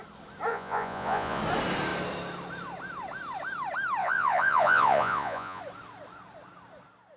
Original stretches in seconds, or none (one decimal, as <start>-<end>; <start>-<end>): 0.0-0.5; 1.4-4.0; 5.6-7.2